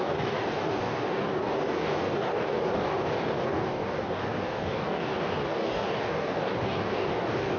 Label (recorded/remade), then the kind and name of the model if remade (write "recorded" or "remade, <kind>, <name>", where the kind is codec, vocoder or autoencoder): remade, codec, DAC